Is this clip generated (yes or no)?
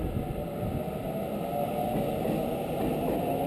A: no